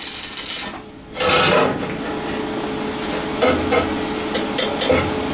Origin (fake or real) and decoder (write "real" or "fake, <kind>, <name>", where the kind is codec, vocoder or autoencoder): real